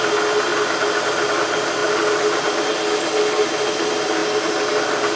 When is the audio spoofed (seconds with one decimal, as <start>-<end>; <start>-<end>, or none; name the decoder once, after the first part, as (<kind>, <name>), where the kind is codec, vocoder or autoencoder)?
none